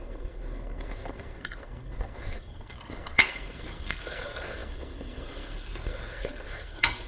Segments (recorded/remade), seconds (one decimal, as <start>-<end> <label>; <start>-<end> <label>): 0.0-7.1 remade